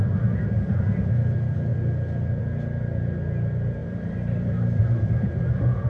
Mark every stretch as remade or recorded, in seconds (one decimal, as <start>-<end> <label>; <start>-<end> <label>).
0.0-3.8 recorded; 3.8-5.1 remade; 5.1-5.9 recorded